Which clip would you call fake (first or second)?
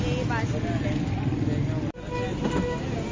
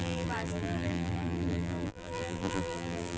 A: second